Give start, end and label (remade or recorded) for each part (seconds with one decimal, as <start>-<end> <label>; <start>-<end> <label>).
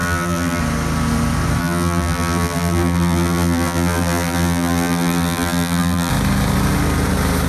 0.0-0.6 remade; 0.6-1.6 recorded; 1.6-6.1 remade; 6.1-7.5 recorded